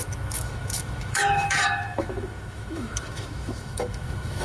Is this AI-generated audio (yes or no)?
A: yes